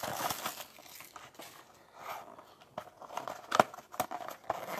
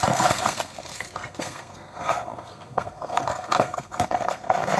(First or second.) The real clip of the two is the first